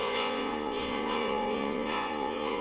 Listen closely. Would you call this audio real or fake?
fake